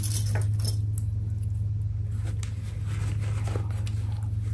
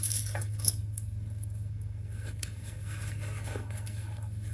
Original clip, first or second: first